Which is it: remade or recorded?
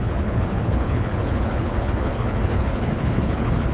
remade